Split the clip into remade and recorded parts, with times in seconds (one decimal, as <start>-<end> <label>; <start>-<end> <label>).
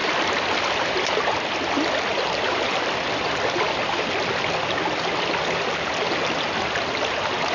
0.0-4.1 remade; 4.1-7.5 recorded